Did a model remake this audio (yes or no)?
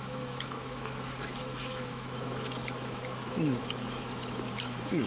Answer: yes